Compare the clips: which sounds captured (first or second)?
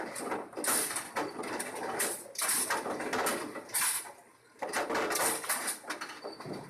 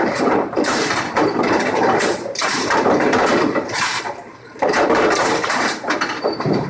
first